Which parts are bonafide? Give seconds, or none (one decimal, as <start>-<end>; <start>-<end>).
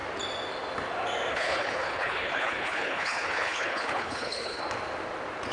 0.0-1.3; 4.6-5.5